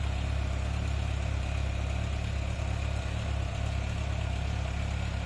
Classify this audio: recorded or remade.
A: recorded